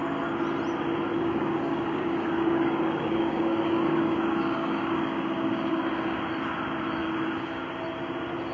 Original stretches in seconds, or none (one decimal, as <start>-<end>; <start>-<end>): 0.0-1.1; 6.2-7.0; 7.6-8.5